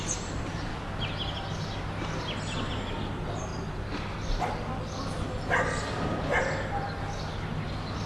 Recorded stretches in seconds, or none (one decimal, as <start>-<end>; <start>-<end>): 0.7-3.1; 3.5-8.1